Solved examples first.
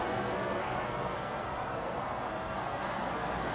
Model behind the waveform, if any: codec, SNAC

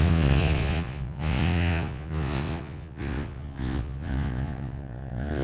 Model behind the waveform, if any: vocoder, Vocos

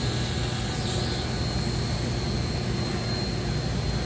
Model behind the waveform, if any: none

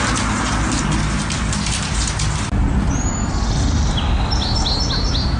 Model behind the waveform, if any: none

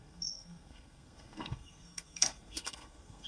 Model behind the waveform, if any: codec, SNAC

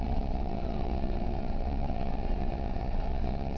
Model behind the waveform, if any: vocoder, WaveNeXt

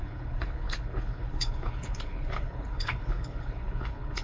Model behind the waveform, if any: codec, HILCodec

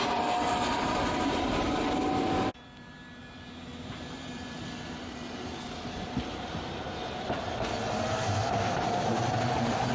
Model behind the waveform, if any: none